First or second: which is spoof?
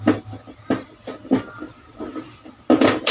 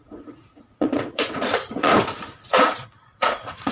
second